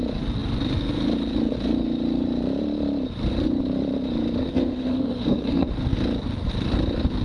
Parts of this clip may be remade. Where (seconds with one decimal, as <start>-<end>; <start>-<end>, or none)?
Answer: 4.4-5.7